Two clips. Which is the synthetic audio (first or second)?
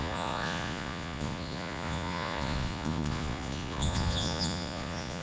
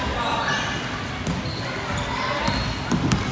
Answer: first